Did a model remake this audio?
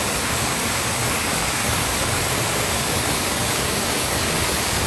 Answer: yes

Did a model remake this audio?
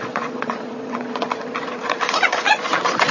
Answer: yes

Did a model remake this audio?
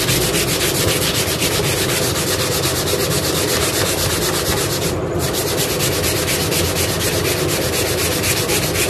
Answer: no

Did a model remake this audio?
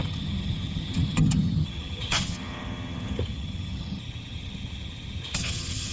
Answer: yes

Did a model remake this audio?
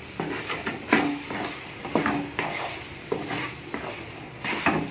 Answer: no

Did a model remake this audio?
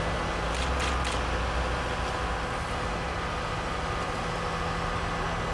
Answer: no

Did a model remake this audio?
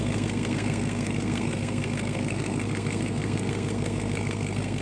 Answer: yes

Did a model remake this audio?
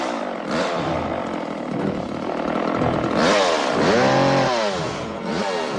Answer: no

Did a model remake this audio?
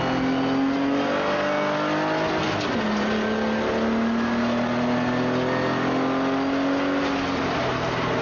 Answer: no